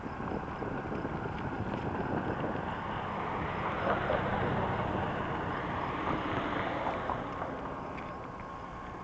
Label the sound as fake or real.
real